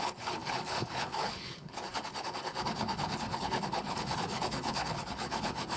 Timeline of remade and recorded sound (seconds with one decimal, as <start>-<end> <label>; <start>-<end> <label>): 0.0-5.8 remade

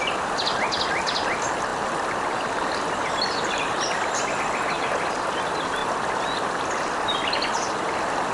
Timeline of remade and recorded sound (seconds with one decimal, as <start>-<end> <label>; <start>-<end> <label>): 0.0-8.3 recorded

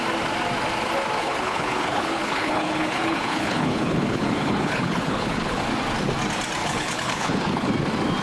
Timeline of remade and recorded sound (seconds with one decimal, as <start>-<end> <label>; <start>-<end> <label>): 0.0-1.2 recorded; 1.2-5.6 remade; 5.6-6.6 recorded; 6.6-7.7 remade; 7.7-8.2 recorded

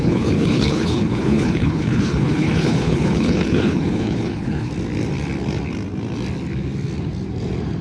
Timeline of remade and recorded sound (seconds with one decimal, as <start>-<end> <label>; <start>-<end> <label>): 0.0-4.7 remade; 4.7-7.8 recorded

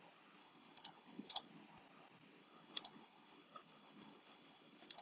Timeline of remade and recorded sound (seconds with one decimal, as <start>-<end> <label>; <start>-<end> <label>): 0.0-0.4 recorded; 0.4-1.5 remade; 1.5-2.4 recorded; 2.4-5.0 remade

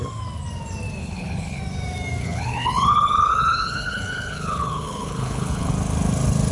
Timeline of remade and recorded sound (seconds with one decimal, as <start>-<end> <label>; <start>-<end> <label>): 0.0-1.0 recorded; 1.0-1.6 remade; 1.6-2.2 recorded; 2.2-5.7 remade; 5.7-6.5 recorded

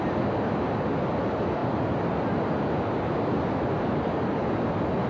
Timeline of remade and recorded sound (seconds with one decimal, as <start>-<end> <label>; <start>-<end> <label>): 0.0-5.1 recorded

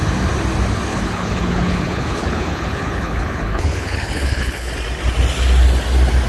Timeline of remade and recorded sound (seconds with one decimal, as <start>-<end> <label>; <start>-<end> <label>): 0.0-0.9 recorded; 0.9-4.7 remade; 4.7-6.3 recorded